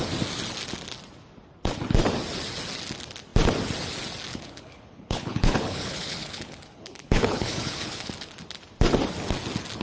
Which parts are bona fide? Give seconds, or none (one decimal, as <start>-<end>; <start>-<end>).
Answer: 0.0-4.3; 8.1-9.8